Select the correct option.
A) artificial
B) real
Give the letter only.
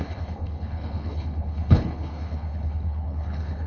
A